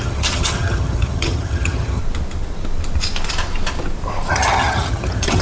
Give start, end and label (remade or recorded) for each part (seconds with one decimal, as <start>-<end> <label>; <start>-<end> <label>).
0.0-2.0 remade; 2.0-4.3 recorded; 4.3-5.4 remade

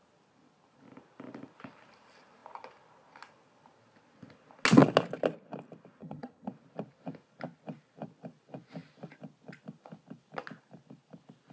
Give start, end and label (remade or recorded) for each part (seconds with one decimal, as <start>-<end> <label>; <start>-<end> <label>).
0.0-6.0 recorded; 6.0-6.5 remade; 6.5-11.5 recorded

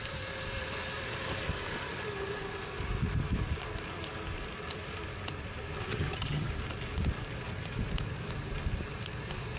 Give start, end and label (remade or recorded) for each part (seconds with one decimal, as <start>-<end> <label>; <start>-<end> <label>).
0.0-5.9 recorded; 5.9-6.5 remade; 6.5-9.6 recorded